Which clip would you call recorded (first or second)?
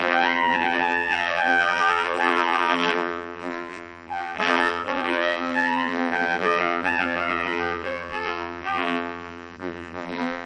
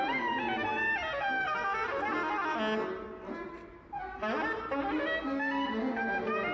second